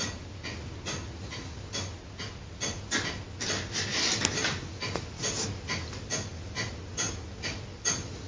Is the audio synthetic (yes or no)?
no